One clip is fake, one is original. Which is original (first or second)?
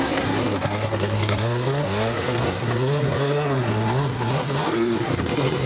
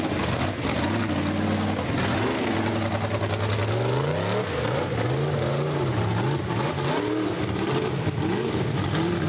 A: second